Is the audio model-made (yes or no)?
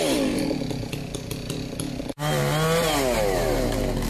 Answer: no